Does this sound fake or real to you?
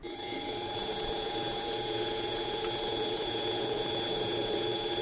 fake